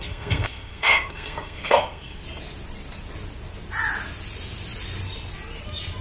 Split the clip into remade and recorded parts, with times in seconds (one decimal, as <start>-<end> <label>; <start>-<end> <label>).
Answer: 0.0-2.2 remade; 2.2-6.0 recorded